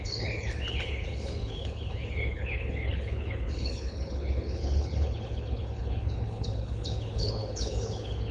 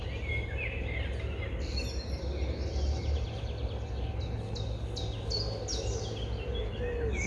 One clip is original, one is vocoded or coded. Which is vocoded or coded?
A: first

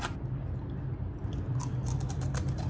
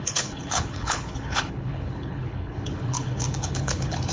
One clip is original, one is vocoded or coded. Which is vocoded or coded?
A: second